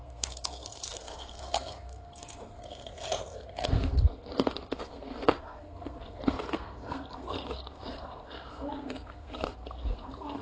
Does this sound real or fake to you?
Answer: fake